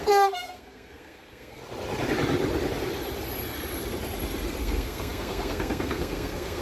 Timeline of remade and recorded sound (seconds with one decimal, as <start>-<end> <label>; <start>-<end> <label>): 0.0-1.6 remade; 1.6-4.6 recorded; 4.6-6.6 remade